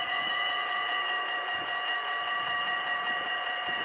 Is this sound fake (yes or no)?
yes